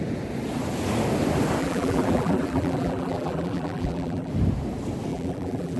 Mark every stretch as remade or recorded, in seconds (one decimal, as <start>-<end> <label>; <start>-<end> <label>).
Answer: 0.0-1.6 recorded; 1.6-4.3 remade; 4.3-5.1 recorded; 5.1-5.8 remade